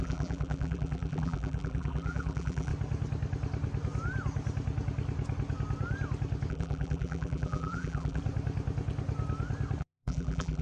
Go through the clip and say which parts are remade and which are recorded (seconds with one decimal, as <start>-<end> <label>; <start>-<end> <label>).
0.0-2.7 remade; 2.7-6.5 recorded; 6.5-8.2 remade; 8.2-9.8 recorded; 9.8-10.6 remade